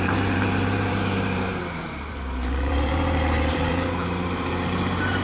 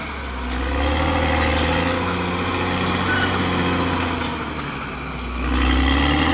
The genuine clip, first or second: second